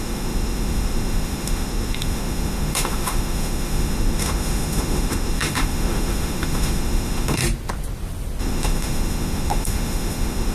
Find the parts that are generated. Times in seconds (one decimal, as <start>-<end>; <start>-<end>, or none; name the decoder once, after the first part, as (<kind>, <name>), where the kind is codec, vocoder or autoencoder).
0.0-7.4 (autoencoder, DAC-VAE); 8.4-10.5